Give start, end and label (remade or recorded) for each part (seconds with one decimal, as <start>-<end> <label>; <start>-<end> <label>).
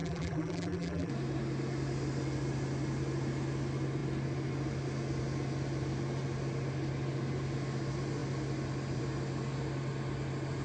0.0-1.1 remade; 1.1-10.6 recorded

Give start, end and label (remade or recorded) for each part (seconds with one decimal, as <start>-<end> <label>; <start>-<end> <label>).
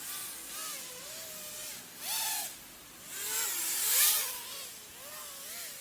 0.0-1.6 recorded; 1.6-5.1 remade; 5.1-5.8 recorded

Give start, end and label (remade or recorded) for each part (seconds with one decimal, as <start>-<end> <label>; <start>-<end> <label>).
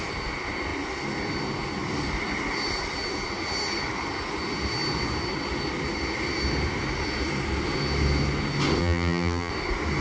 0.0-8.8 recorded; 8.8-9.5 remade; 9.5-10.0 recorded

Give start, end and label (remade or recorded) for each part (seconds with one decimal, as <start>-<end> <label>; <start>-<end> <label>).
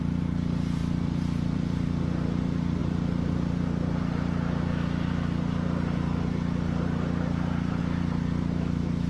0.0-9.1 remade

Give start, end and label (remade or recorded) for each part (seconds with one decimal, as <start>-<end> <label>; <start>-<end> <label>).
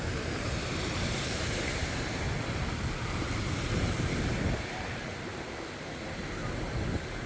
0.0-1.8 remade; 1.8-2.5 recorded; 2.5-5.3 remade; 5.3-6.0 recorded; 6.0-6.4 remade; 6.4-7.3 recorded